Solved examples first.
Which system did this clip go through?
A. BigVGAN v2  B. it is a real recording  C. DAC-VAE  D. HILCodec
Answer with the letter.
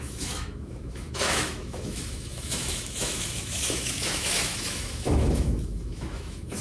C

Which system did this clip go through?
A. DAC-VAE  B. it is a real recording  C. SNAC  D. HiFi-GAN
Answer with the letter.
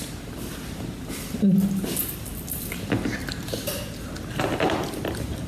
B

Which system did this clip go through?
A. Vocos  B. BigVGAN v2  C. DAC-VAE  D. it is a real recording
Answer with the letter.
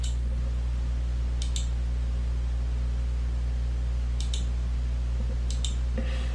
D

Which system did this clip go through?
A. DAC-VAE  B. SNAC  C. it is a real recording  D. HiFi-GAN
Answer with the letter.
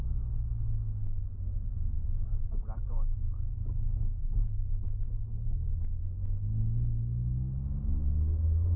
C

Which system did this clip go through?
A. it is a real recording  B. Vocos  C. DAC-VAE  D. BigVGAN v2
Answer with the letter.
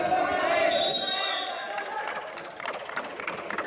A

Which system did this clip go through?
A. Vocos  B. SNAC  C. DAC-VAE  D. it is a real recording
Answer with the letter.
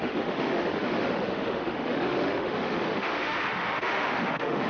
C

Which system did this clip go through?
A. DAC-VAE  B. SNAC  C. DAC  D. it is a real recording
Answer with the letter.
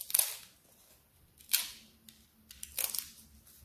D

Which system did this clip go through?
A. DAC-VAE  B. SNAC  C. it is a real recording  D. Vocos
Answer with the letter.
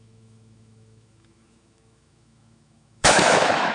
A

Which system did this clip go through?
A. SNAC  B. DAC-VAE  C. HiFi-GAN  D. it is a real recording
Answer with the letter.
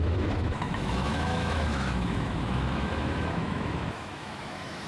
B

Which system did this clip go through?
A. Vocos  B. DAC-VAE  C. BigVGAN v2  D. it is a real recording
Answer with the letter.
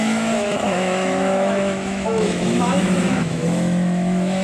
B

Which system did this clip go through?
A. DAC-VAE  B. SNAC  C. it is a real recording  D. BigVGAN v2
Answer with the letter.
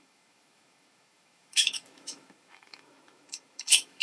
A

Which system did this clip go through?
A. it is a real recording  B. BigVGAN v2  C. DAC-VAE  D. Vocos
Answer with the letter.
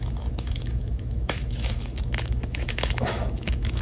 C